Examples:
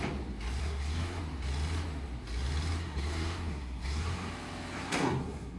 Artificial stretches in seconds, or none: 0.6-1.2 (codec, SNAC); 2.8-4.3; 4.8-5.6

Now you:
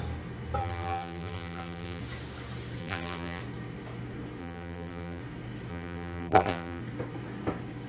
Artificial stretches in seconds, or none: 0.6-2.0 (vocoder, BigVGAN v2); 2.8-3.4; 4.4-5.2; 5.7-6.8